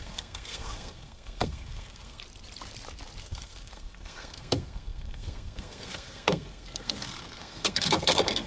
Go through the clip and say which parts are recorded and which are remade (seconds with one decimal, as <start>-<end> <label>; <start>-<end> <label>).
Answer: 0.0-2.2 remade; 2.2-3.2 recorded; 3.2-8.5 remade